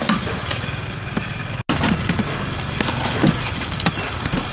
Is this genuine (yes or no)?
yes